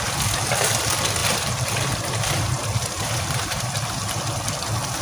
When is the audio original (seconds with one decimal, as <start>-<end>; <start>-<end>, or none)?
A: 0.0-1.2; 4.2-5.0